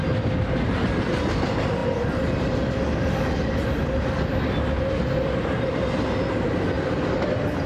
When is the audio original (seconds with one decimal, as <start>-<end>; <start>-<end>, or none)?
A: 0.0-7.7